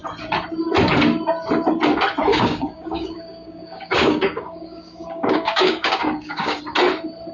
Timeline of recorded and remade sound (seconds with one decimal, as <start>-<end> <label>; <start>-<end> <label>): 0.0-2.3 recorded; 2.3-6.6 remade; 6.6-7.3 recorded